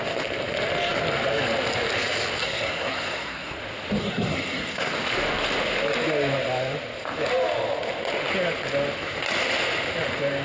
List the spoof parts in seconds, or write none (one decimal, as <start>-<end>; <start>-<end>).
2.4-3.6; 4.0-4.9